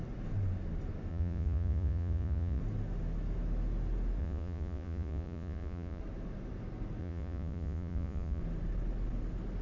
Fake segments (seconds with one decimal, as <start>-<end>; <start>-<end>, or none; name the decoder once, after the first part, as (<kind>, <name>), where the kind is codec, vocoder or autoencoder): 1.1-2.6 (vocoder, Vocos); 4.2-6.0; 7.0-8.4